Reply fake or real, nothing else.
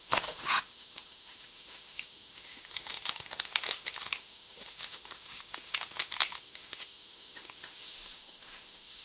fake